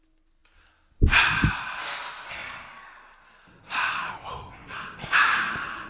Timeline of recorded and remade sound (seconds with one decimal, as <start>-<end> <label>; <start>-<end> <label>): 0.0-4.6 recorded; 4.6-5.5 remade; 5.5-5.9 recorded